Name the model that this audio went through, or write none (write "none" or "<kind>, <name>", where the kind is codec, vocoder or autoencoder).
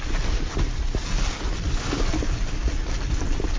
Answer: none